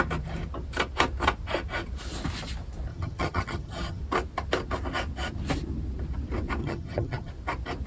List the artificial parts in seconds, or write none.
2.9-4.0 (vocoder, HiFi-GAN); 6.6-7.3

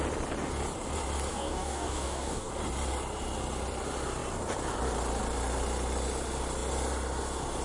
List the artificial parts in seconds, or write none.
1.3-2.5 (codec, DAC)

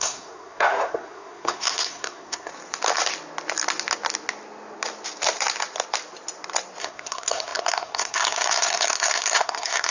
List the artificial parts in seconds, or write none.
0.0-2.5 (codec, SNAC); 6.8-9.9

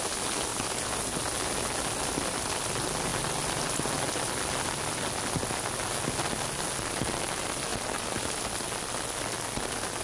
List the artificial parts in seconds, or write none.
none

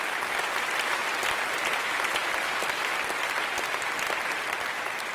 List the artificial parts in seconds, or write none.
none